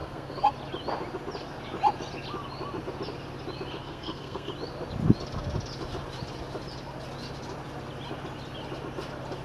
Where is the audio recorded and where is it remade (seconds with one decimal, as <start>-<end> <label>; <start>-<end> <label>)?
0.0-0.5 remade; 0.5-3.8 recorded; 3.8-4.5 remade; 4.5-9.4 recorded